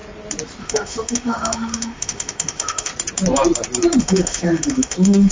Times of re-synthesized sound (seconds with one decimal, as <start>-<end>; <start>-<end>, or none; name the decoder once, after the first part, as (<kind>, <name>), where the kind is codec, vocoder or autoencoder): 0.6-2.9 (autoencoder, DAC-VAE); 4.0-5.3